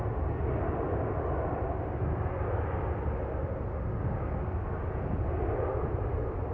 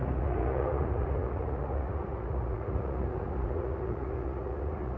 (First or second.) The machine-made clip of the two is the second